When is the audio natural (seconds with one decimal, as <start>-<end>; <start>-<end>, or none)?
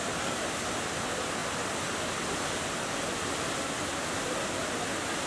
0.0-5.3